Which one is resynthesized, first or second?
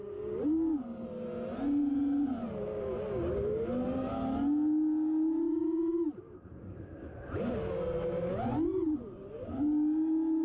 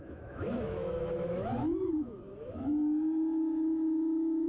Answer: second